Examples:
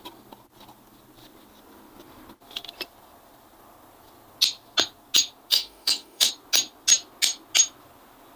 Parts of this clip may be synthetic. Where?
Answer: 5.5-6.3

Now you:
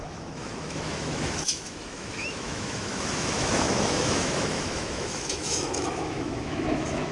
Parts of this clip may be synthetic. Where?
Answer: 0.0-7.1

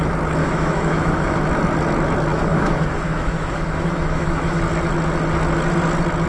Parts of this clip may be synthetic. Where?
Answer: 0.4-1.4; 2.3-4.6